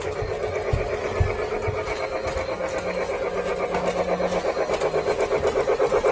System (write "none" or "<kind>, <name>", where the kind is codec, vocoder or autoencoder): none